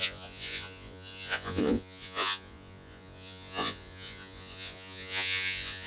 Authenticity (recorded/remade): remade